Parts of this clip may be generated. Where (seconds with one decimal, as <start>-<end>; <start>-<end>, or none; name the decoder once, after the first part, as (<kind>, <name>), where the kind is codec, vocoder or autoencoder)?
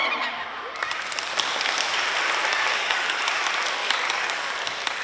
2.7-3.2 (codec, DAC); 3.8-4.5